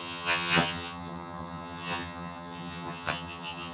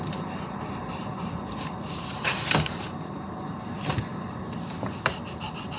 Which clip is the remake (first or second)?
first